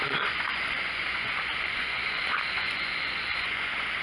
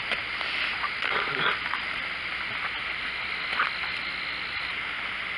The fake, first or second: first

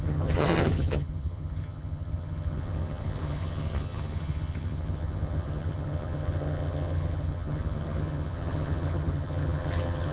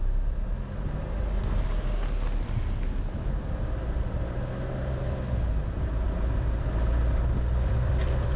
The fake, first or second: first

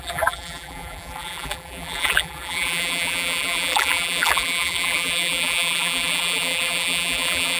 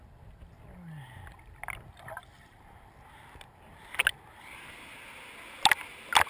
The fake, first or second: first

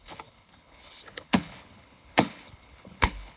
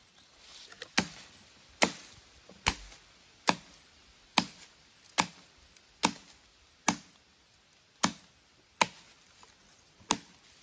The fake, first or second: first